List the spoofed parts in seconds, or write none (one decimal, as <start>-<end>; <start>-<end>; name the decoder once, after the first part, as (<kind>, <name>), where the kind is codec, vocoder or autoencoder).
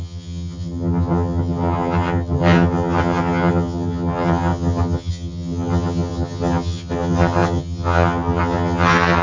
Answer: 0.0-9.2 (vocoder, HiFi-GAN)